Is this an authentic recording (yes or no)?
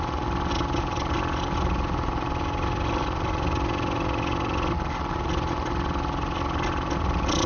yes